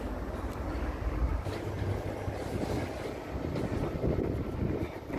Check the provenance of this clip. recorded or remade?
recorded